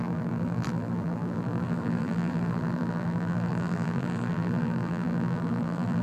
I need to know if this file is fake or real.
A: fake